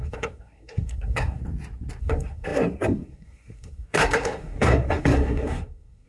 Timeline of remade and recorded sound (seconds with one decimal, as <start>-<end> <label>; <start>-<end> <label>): 0.0-1.4 remade; 1.4-2.0 recorded; 2.0-6.1 remade